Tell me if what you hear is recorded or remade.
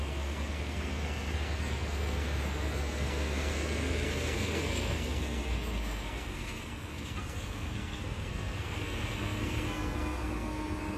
remade